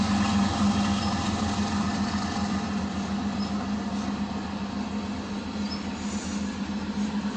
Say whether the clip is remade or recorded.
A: recorded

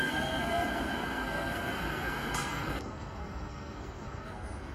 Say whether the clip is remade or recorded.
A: remade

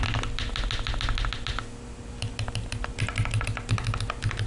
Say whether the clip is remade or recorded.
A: recorded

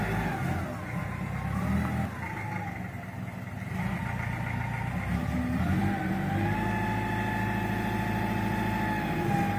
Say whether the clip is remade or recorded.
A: recorded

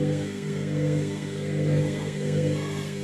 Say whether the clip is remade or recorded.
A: remade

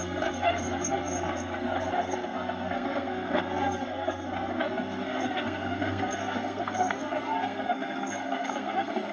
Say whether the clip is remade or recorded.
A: remade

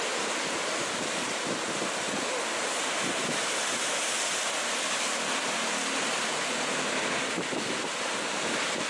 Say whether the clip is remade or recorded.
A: recorded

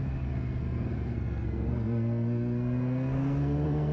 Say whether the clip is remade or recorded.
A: remade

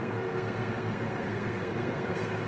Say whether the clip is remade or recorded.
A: remade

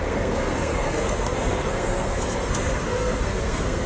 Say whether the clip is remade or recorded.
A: remade